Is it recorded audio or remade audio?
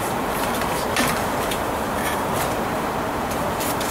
remade